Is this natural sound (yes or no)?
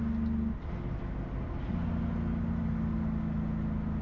yes